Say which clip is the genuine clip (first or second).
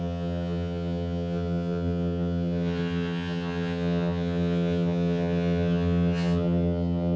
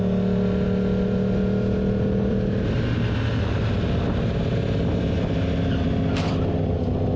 second